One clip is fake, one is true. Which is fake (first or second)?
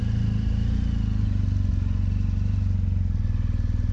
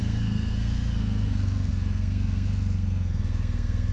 second